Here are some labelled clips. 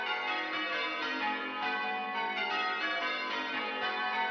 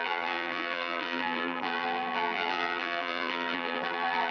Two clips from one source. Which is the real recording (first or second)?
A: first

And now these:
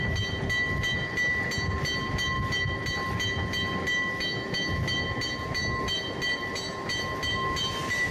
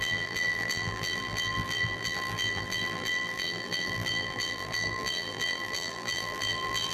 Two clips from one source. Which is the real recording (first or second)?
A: first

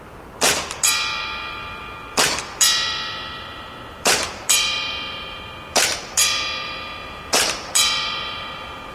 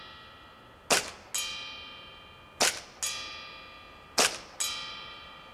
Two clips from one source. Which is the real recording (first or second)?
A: second